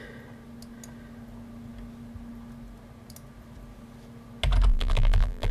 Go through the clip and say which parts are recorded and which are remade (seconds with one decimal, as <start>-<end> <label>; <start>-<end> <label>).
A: 0.0-4.7 recorded; 4.7-5.5 remade